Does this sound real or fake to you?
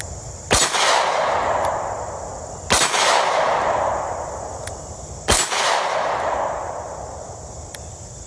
real